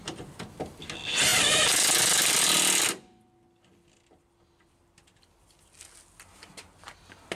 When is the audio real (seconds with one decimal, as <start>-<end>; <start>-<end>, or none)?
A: 0.0-7.4